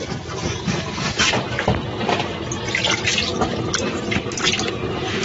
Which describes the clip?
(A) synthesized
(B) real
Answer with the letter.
B